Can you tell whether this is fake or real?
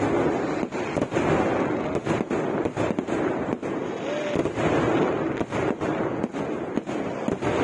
real